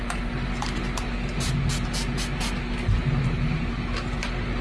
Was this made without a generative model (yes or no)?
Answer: yes